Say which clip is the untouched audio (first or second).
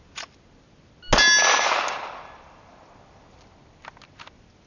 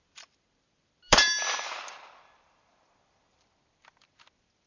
first